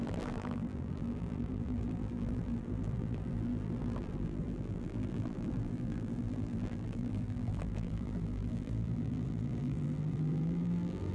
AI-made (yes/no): yes